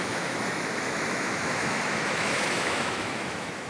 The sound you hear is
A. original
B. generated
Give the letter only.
B